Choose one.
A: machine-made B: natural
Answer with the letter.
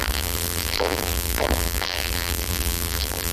A